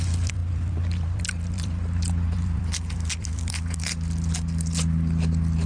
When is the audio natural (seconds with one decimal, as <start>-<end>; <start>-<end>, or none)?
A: 0.0-5.7